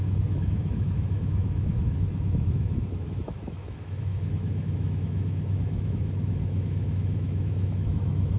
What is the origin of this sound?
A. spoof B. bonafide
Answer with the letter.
A